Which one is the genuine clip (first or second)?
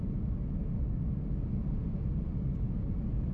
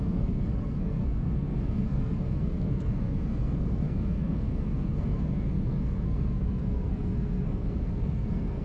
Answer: first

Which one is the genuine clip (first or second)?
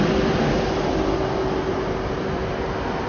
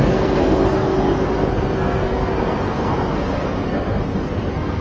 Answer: first